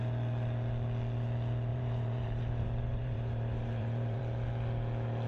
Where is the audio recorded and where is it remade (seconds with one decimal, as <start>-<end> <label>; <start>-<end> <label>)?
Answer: 0.0-1.7 recorded; 1.7-4.2 remade; 4.2-5.3 recorded